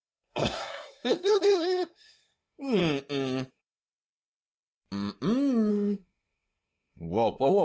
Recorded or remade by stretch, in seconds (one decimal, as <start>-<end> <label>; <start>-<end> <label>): 0.0-2.8 remade; 2.8-3.5 recorded; 3.5-3.9 remade; 3.9-5.7 recorded; 5.7-7.6 remade

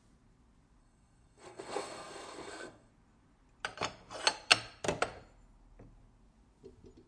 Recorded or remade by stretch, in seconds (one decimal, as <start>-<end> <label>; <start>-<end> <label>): 0.0-0.8 recorded; 0.8-2.9 remade; 2.9-7.1 recorded

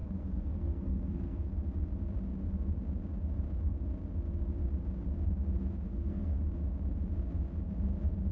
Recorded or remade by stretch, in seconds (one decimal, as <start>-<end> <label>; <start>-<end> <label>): 0.0-1.5 remade; 1.5-5.9 recorded; 5.9-6.4 remade; 6.4-8.3 recorded

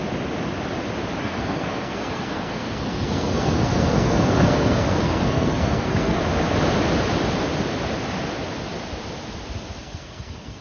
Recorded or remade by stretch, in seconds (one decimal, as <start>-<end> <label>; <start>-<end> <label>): 0.0-1.2 recorded; 1.2-6.2 remade; 6.2-9.8 recorded; 9.8-10.6 remade

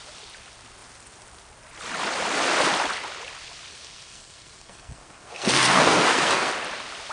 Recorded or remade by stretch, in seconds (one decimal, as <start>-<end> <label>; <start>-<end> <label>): 0.0-3.7 recorded; 3.7-6.5 remade; 6.5-7.1 recorded

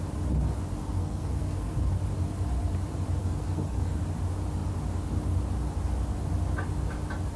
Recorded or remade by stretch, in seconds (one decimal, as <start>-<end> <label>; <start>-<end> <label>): 0.0-0.8 recorded; 0.8-2.0 remade; 2.0-3.2 recorded; 3.2-4.0 remade; 4.0-7.4 recorded

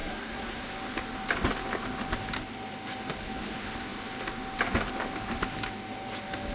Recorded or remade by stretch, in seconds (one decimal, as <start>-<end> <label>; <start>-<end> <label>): 0.0-0.6 remade; 0.6-6.5 recorded

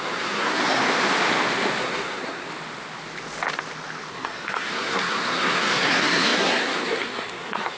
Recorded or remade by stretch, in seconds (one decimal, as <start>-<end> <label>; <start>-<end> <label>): 0.0-0.8 remade; 0.8-1.8 recorded; 1.8-2.5 remade; 2.5-4.1 recorded; 4.1-7.8 remade